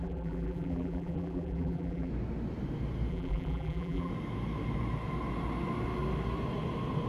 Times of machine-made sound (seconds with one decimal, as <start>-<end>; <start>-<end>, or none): 0.0-2.1; 3.1-4.1

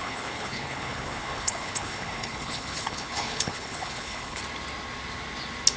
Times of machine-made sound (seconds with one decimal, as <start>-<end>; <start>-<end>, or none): 0.0-4.4

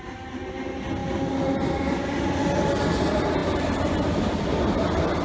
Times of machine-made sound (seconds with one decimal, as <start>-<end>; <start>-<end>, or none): 3.4-4.6

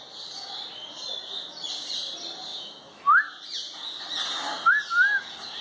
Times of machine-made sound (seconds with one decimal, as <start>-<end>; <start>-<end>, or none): 2.5-3.0